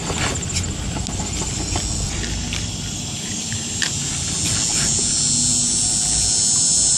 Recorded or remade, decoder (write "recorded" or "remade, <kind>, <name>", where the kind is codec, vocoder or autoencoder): recorded